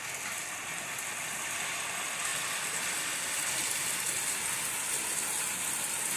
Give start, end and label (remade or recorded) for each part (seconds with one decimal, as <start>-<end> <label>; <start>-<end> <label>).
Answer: 0.0-6.2 recorded